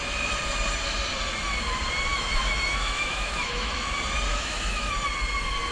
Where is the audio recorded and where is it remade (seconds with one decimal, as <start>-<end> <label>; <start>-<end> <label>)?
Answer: 0.0-2.1 recorded; 2.1-3.9 remade; 3.9-4.3 recorded; 4.3-4.9 remade; 4.9-5.7 recorded